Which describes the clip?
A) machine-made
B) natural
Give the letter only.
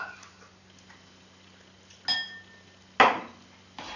B